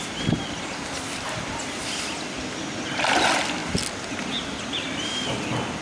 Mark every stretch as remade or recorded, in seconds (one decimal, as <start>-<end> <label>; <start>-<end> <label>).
0.0-5.8 remade